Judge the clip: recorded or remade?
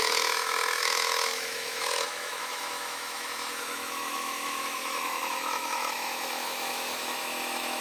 remade